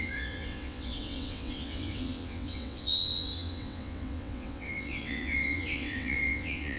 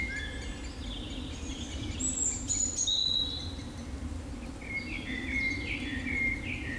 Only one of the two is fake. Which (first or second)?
first